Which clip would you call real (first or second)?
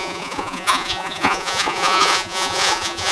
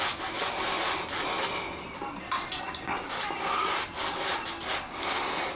second